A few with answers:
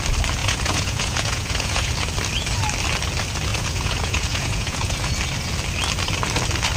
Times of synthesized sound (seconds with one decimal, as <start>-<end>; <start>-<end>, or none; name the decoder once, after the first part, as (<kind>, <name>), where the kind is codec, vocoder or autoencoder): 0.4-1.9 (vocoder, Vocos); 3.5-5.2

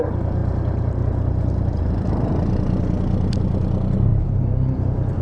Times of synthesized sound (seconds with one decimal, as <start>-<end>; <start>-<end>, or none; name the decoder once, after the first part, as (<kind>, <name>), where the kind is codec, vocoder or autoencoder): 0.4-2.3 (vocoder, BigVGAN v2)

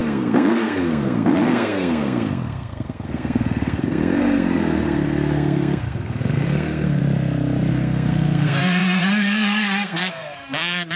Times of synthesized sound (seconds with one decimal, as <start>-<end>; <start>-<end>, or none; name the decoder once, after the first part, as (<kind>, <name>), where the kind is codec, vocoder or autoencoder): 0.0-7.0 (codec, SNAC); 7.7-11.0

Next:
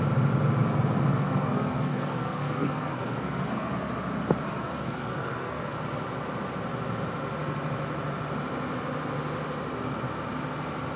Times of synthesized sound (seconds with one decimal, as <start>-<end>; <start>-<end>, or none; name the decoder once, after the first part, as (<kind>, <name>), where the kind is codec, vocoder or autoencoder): 1.1-3.9 (codec, SNAC); 4.7-5.8

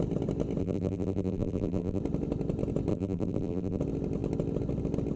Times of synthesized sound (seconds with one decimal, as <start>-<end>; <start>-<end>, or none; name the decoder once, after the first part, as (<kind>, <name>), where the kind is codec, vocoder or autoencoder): 0.6-2.0 (vocoder, BigVGAN v2); 2.9-3.8

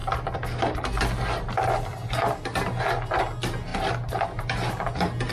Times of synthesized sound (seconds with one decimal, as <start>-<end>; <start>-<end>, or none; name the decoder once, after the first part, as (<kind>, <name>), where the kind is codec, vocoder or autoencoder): none